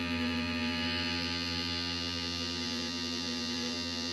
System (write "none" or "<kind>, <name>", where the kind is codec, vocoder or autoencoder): vocoder, BigVGAN v2